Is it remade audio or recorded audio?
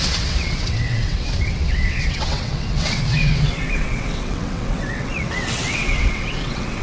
remade